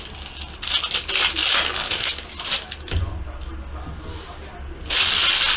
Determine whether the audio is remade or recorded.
recorded